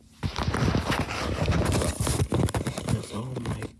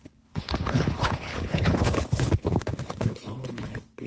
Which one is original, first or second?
first